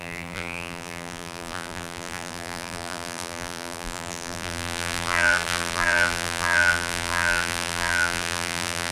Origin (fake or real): fake